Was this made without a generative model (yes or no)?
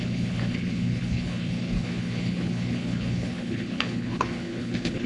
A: no